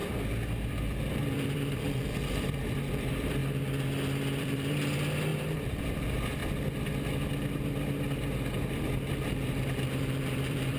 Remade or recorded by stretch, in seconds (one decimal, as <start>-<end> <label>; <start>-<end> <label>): 0.0-0.7 recorded; 0.7-3.4 remade; 3.4-4.4 recorded; 4.4-6.4 remade; 6.4-8.6 recorded; 8.6-10.8 remade